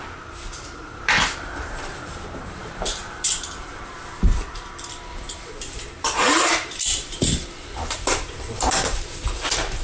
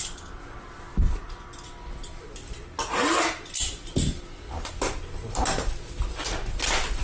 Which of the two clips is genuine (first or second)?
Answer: second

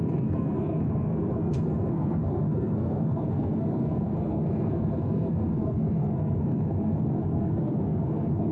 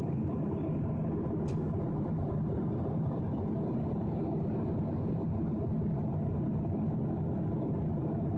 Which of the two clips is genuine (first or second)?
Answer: second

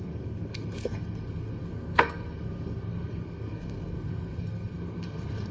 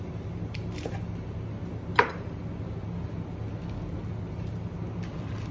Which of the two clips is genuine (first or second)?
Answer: second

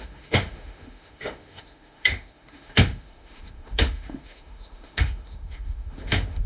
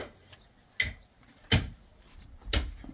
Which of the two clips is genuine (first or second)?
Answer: second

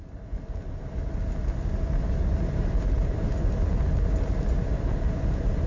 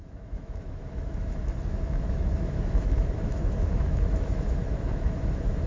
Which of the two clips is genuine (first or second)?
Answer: first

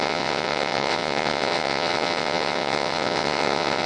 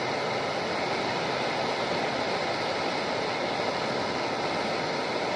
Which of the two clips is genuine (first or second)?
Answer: second